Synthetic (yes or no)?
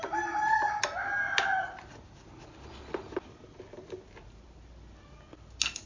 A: no